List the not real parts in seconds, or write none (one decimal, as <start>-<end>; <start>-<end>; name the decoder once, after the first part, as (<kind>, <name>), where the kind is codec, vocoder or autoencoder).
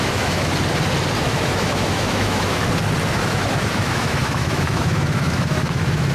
0.0-0.5 (autoencoder, DAC-VAE); 1.2-2.6; 3.1-6.1